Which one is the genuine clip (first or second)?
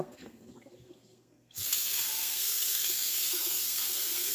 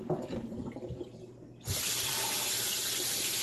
second